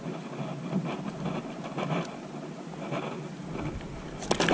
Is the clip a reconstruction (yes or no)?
no